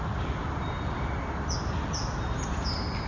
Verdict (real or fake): real